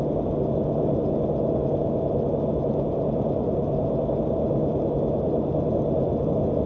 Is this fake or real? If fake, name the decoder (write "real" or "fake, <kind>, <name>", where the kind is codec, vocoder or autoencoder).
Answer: real